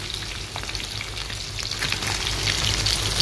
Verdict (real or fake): real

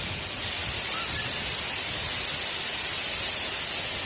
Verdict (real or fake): real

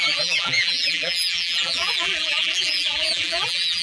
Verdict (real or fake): fake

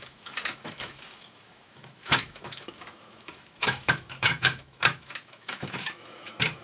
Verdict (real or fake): fake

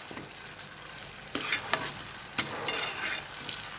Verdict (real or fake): real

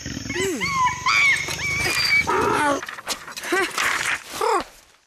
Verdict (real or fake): real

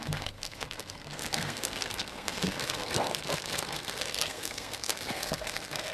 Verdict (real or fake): fake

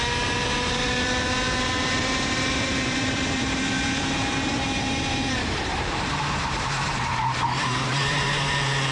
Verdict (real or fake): fake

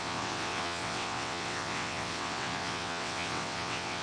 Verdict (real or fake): fake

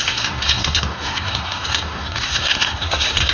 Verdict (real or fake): fake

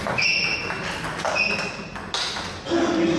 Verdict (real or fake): real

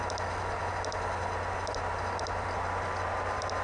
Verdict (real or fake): real